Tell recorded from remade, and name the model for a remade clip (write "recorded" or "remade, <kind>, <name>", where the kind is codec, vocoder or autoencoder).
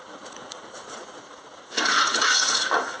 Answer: remade, vocoder, Vocos